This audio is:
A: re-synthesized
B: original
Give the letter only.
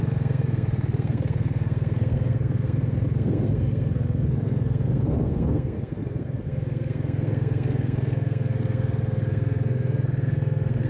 A